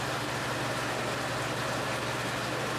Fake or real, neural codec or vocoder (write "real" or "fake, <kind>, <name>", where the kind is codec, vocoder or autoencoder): real